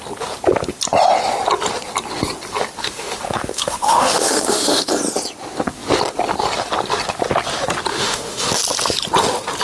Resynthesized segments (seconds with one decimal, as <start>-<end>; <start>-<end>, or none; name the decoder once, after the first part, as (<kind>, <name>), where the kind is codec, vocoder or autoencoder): 2.8-4.9 (autoencoder, DAC-VAE); 7.9-8.5